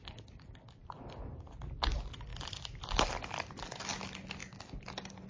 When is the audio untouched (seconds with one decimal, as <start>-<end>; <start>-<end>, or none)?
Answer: 0.0-5.3